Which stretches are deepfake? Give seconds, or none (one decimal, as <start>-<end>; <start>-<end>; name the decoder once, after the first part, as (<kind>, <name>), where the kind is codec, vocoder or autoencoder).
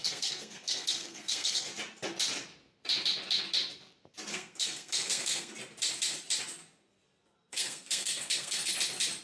0.0-1.7 (codec, SNAC); 4.3-5.5; 7.5-8.7